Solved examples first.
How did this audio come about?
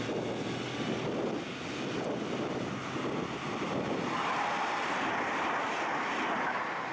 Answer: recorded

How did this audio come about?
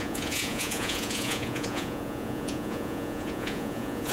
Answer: remade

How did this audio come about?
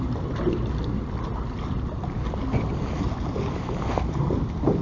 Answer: recorded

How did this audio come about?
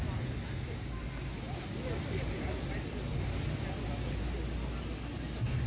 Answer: recorded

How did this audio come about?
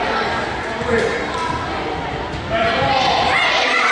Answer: recorded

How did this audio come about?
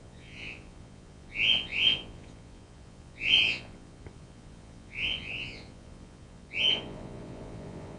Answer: remade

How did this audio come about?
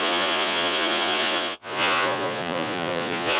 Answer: remade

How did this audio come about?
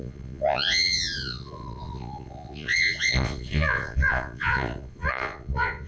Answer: remade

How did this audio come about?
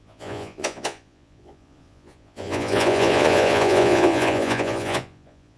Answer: remade